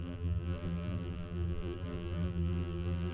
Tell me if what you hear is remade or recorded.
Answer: remade